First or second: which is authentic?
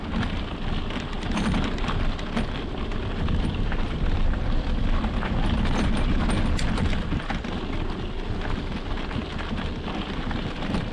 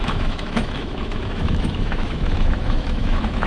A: first